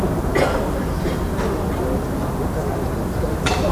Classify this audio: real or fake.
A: real